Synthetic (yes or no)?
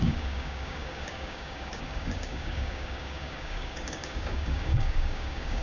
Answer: yes